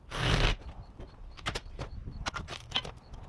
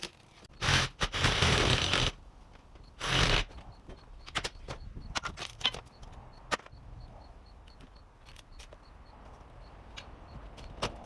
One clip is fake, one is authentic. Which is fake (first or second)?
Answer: first